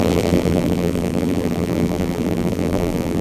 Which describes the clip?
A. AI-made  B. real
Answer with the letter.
A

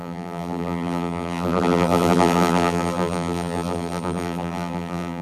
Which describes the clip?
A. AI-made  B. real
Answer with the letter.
A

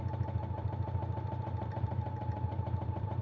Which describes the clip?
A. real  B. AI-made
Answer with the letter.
B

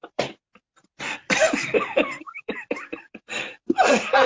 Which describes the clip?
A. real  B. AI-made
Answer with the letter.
B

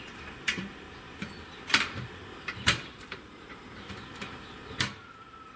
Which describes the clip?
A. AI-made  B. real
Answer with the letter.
A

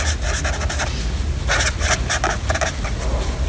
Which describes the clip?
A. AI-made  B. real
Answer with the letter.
B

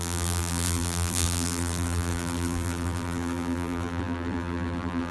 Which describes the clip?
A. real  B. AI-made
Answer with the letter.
B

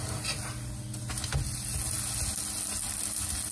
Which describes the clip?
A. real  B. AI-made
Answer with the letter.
A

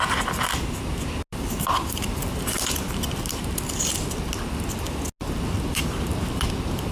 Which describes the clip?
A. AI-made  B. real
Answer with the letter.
B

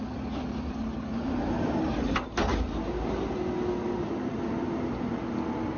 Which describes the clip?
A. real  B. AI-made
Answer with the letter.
A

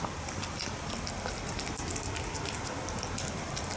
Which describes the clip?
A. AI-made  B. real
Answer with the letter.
B